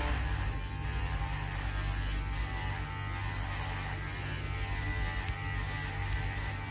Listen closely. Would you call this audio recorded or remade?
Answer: recorded